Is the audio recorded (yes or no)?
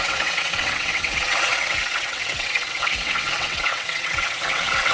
no